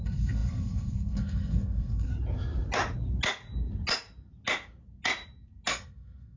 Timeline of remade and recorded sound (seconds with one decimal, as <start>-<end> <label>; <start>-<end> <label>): 0.0-2.1 remade; 2.1-5.7 recorded; 5.7-6.4 remade